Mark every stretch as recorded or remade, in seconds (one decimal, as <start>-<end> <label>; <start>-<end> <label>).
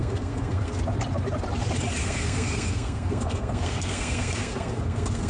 0.0-0.8 remade; 0.8-2.0 recorded; 2.0-5.3 remade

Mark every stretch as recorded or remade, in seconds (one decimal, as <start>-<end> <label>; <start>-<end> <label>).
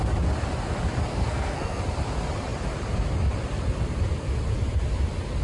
0.0-1.1 recorded; 1.1-1.8 remade; 1.8-5.4 recorded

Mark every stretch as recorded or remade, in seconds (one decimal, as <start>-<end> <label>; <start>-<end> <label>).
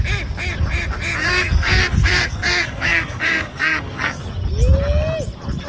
0.0-1.2 recorded; 1.2-4.2 remade; 4.2-5.7 recorded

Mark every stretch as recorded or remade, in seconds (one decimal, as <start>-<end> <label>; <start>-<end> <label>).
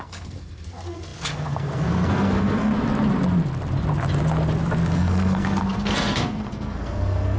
0.0-2.7 remade; 2.7-4.9 recorded; 4.9-7.4 remade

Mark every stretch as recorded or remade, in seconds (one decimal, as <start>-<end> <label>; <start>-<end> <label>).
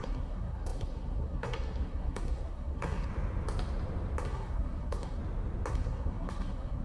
0.0-3.1 remade; 3.1-4.2 recorded; 4.2-5.2 remade; 5.2-5.7 recorded; 5.7-6.8 remade